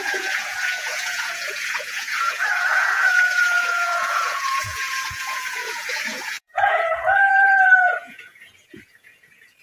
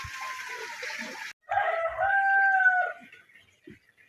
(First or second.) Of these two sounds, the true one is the second